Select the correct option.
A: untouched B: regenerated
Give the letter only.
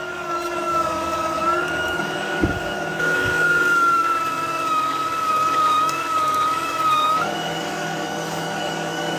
B